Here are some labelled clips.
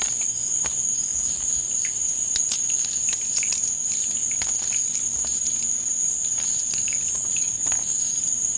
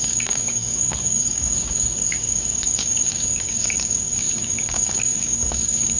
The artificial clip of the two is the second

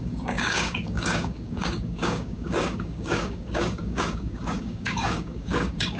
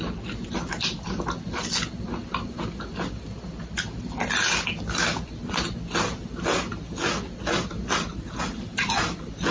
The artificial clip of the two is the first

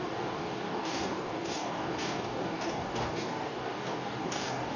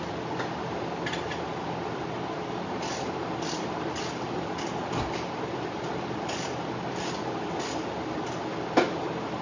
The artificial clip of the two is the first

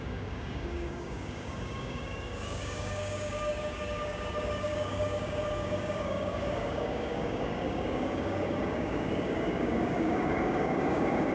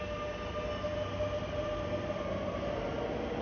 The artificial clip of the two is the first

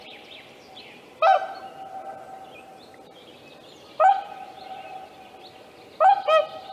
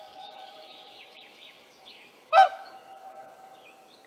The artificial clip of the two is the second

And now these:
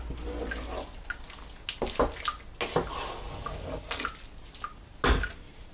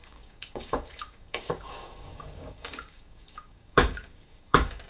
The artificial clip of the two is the second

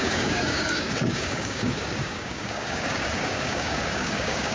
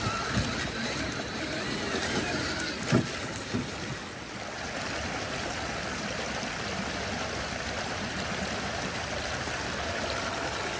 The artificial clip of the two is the first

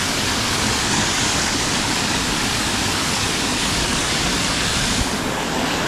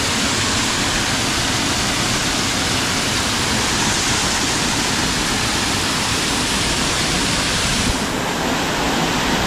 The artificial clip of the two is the first